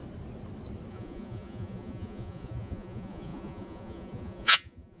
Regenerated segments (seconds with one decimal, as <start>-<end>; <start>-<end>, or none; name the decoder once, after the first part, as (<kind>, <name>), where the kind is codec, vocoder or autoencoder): 0.9-5.0 (vocoder, Vocos)